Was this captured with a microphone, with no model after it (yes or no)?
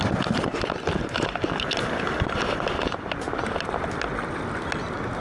yes